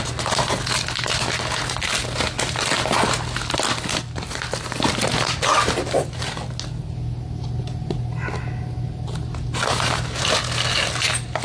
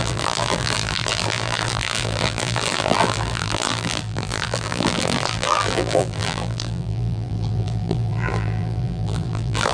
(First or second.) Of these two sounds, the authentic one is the first